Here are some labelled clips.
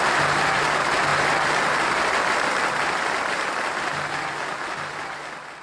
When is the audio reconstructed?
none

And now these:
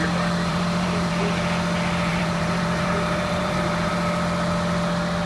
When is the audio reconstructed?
0.5-1.1; 2.1-3.9

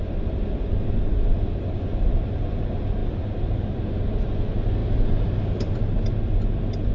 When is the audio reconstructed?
4.8-5.8

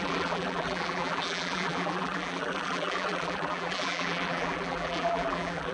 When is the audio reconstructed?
0.0-5.7

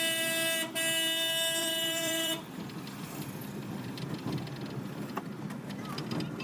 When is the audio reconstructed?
1.6-5.4

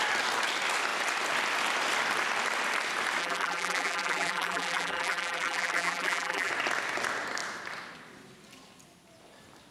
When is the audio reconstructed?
3.2-6.5

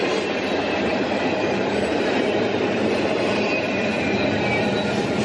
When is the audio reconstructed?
0.9-4.0

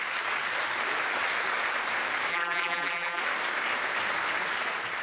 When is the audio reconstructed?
2.3-3.2